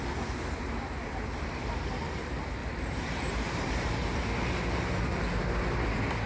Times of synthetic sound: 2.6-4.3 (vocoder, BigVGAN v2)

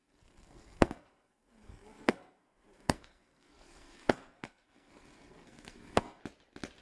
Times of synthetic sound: 0.0-6.2 (codec, SNAC)

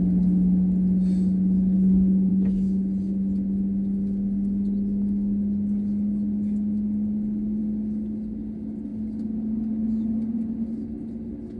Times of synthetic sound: none